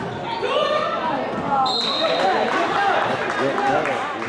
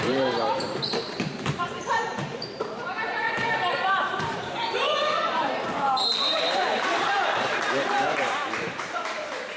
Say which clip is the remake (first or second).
second